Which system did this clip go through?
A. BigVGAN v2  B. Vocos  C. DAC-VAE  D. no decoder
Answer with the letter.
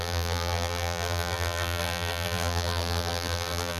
A